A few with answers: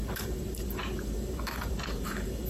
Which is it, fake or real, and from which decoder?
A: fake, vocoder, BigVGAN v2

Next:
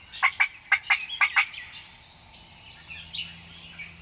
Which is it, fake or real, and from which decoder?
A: real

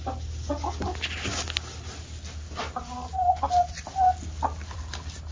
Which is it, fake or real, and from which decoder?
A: real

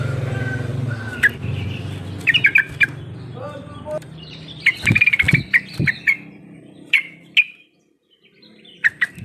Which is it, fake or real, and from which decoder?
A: real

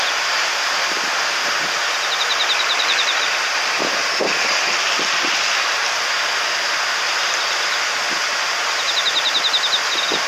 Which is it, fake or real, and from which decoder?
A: real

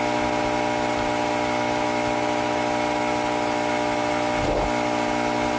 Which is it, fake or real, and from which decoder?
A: real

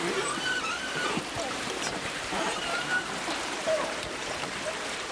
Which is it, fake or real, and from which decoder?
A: fake, vocoder, BigVGAN v2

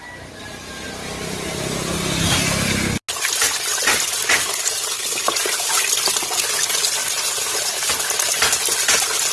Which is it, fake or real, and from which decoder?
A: real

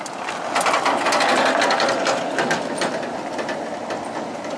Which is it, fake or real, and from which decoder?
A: real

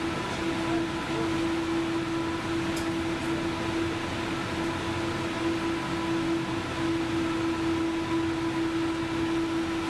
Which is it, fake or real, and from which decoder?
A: real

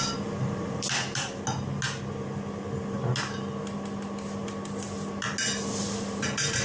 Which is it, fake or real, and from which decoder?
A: real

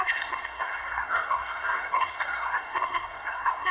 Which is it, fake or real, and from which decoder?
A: fake, codec, SNAC